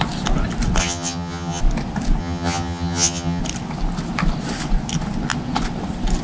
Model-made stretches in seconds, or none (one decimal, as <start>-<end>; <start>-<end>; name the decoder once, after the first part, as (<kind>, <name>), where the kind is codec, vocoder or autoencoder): 0.8-1.6 (vocoder, HiFi-GAN); 2.2-3.4